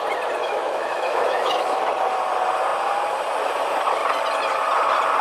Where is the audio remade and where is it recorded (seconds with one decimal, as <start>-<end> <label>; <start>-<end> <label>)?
0.0-0.4 recorded; 0.4-1.8 remade; 1.8-5.2 recorded